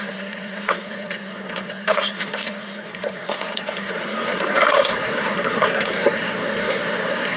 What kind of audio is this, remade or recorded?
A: remade